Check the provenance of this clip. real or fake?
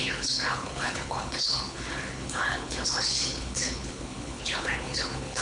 fake